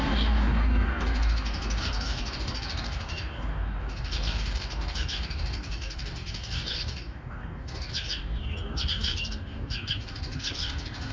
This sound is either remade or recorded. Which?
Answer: remade